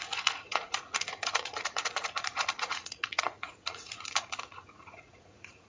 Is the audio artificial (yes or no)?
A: yes